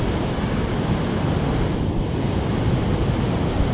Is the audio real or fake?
real